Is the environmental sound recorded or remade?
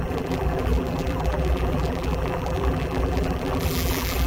remade